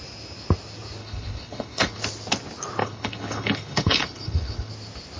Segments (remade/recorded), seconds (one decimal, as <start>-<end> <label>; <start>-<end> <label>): 0.0-1.0 recorded; 1.0-2.0 remade; 2.0-2.8 recorded; 2.8-4.7 remade; 4.7-5.2 recorded